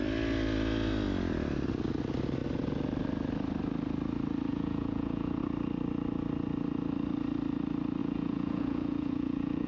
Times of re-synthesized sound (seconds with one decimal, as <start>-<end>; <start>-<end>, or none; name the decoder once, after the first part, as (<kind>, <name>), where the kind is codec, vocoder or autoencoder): 4.5-5.4 (vocoder, Vocos); 8.0-9.7